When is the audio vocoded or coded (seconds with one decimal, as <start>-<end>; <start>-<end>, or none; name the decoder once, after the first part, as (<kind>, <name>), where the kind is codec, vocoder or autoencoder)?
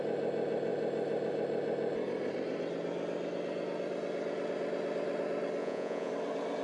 5.6-6.1 (vocoder, Vocos)